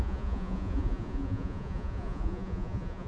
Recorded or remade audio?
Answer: remade